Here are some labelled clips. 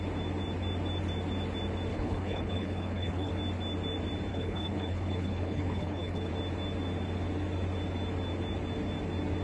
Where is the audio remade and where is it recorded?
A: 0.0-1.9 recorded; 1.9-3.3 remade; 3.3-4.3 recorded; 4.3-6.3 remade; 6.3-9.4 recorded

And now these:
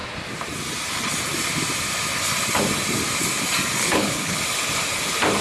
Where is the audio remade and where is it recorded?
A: 0.0-3.8 recorded; 3.8-4.4 remade; 4.4-5.4 recorded

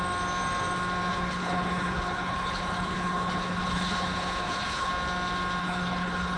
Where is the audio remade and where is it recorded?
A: 0.0-1.1 recorded; 1.1-4.9 remade; 4.9-5.6 recorded; 5.6-6.4 remade

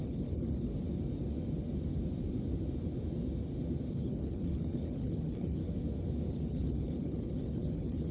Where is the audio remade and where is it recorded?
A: 0.0-0.7 remade; 0.7-3.9 recorded; 3.9-5.6 remade; 5.6-6.3 recorded; 6.3-8.1 remade